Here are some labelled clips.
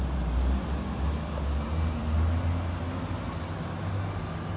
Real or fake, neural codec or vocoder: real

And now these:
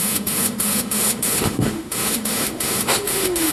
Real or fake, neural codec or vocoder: fake, autoencoder, DAC-VAE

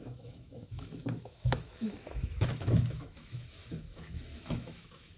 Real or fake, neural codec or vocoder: fake, autoencoder, DAC-VAE